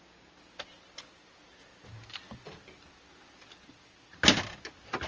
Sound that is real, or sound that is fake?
real